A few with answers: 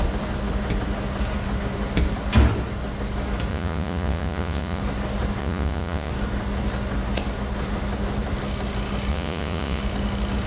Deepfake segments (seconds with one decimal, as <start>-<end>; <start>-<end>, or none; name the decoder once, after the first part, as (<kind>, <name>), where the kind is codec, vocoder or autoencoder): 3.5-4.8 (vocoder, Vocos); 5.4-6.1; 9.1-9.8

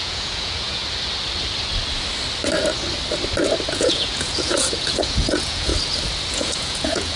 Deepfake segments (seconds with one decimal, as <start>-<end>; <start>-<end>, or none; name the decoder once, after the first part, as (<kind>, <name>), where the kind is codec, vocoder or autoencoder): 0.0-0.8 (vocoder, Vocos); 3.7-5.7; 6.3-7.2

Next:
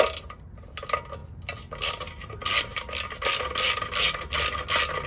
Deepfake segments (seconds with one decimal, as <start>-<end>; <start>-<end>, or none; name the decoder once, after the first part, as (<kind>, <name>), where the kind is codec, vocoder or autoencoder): none

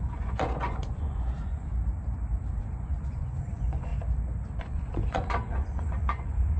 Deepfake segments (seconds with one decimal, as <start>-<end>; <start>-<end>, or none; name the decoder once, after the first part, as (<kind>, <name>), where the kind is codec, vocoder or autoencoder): 0.0-1.7 (vocoder, Vocos); 2.6-3.9; 4.6-6.6